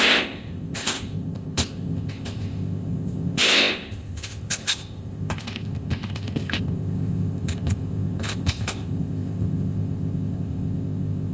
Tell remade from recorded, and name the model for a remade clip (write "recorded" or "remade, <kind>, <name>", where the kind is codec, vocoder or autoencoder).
remade, codec, ZipCodec